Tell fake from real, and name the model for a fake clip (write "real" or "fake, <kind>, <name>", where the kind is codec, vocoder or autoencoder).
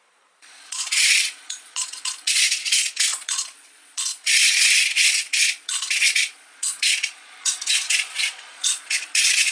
fake, vocoder, Vocos